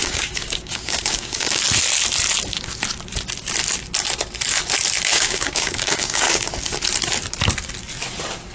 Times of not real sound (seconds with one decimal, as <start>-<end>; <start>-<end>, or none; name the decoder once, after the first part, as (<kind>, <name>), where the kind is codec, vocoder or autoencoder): 0.0-1.6 (codec, DAC); 5.1-6.5